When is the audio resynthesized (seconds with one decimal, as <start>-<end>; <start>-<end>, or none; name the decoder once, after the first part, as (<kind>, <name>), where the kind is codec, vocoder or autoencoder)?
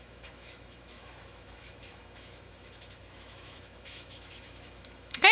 0.0-5.3 (autoencoder, DAC-VAE)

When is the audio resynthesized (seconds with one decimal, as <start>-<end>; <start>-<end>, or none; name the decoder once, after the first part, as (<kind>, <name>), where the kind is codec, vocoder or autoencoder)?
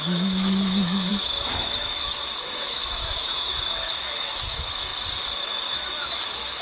0.0-4.9 (autoencoder, DAC-VAE); 5.4-6.6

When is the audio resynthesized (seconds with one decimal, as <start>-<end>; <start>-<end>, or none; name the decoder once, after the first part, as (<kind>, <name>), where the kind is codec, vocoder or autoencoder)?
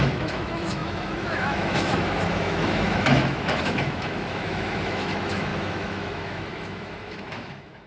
0.0-7.9 (autoencoder, DAC-VAE)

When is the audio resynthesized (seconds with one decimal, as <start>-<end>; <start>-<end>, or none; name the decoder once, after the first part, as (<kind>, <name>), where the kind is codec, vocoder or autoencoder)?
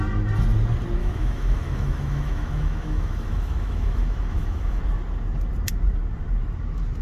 1.0-4.8 (autoencoder, DAC-VAE)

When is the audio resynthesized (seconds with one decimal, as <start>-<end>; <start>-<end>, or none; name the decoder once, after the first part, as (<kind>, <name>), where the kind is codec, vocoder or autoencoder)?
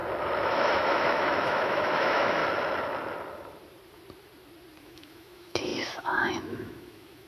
0.5-2.4 (autoencoder, DAC-VAE); 4.8-7.3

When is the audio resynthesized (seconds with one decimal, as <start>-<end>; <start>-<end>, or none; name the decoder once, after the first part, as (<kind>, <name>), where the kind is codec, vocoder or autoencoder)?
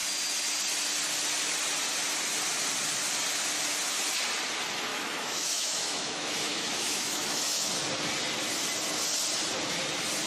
4.9-7.7 (autoencoder, DAC-VAE)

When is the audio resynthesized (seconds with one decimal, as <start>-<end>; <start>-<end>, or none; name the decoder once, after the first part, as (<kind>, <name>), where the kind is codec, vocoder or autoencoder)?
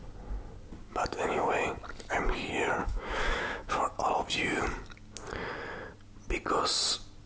0.9-1.5 (autoencoder, DAC-VAE); 2.8-4.0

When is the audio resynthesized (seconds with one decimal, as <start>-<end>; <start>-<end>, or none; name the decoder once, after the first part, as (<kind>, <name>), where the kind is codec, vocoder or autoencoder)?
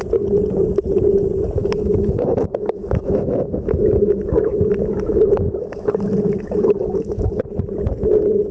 1.6-5.9 (autoencoder, DAC-VAE); 6.8-7.4